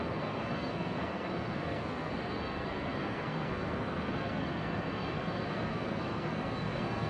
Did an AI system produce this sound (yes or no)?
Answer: yes